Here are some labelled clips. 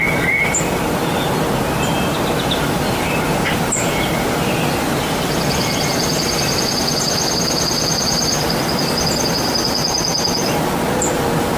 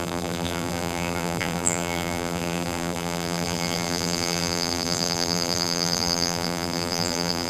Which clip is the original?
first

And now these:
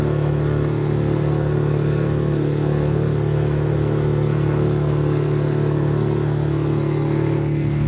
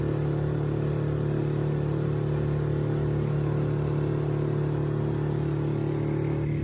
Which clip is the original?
second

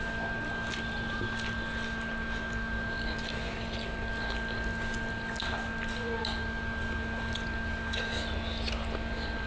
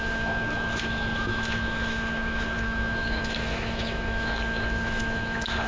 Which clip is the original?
first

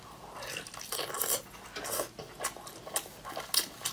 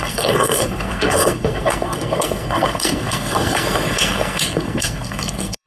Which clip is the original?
first